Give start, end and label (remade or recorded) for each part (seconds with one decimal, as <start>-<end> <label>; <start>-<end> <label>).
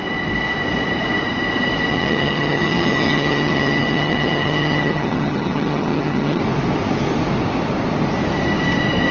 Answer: 0.0-1.9 recorded; 1.9-6.4 remade; 6.4-9.1 recorded